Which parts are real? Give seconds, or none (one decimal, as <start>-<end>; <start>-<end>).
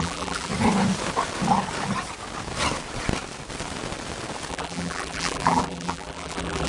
0.5-4.5